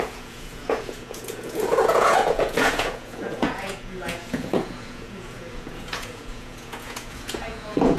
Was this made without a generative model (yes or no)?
no